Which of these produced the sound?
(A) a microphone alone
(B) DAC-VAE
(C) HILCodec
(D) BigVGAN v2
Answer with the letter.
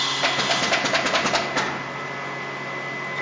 A